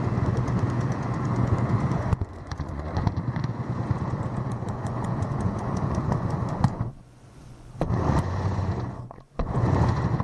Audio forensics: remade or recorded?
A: remade